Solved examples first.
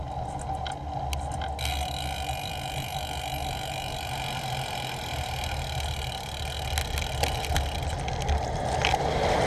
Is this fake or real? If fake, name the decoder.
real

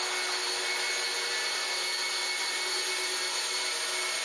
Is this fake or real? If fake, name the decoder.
real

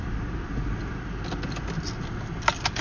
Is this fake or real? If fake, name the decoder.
real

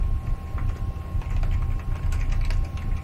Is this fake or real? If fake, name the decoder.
real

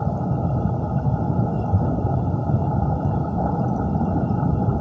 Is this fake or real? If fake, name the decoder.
real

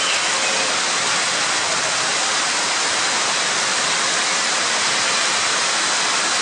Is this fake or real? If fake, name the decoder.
real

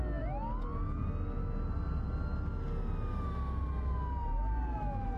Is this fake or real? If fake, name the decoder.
real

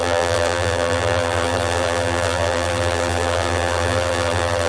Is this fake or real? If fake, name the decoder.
fake, vocoder, BigVGAN v2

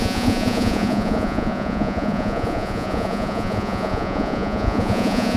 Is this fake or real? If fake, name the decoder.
fake, vocoder, Vocos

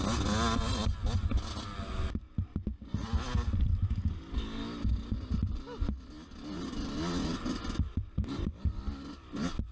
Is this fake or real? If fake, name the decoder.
real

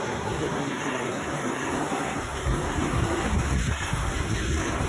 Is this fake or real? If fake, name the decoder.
fake, codec, SNAC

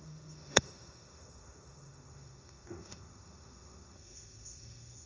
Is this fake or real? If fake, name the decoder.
fake, autoencoder, DAC-VAE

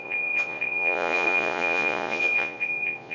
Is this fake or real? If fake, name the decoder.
fake, vocoder, Vocos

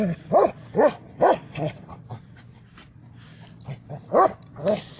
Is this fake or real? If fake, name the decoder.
real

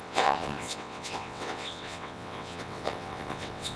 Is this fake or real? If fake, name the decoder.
fake, vocoder, WaveNeXt